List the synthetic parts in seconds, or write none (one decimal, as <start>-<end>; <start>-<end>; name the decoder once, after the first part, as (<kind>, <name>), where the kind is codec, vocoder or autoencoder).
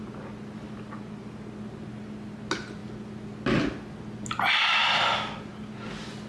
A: none